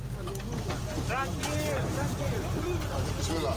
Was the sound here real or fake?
real